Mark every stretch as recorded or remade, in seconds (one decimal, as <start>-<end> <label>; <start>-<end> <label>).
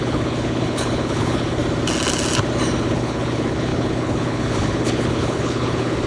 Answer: 0.0-1.6 remade; 1.6-2.8 recorded; 2.8-6.1 remade